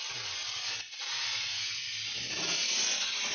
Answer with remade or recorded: recorded